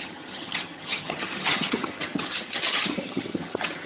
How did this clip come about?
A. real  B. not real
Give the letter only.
B